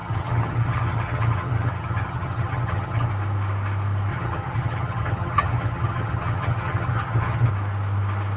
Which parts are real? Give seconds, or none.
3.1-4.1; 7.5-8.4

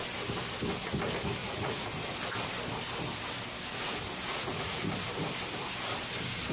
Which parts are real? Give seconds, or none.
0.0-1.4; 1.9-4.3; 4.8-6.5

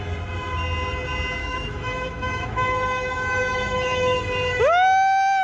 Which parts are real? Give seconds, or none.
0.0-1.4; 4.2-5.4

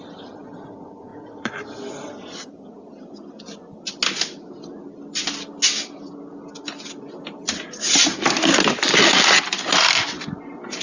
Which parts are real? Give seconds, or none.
0.0-10.8

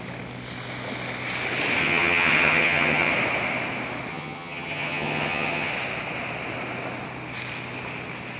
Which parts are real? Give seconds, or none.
0.0-1.8; 3.1-4.1; 5.7-8.4

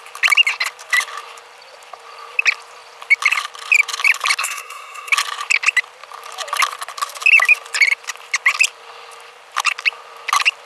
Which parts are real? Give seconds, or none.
0.0-4.4; 5.1-10.7

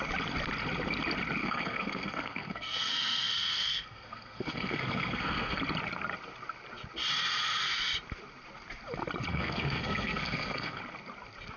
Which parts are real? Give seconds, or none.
0.0-1.4; 5.6-9.3; 10.8-11.6

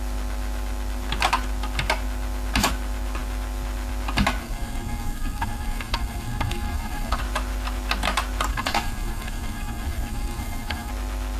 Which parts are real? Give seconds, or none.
0.0-4.4; 7.2-8.5; 10.9-11.4